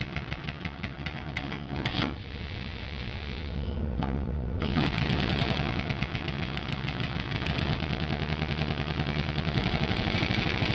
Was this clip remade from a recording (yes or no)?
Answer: yes